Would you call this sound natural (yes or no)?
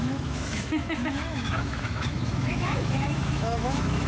no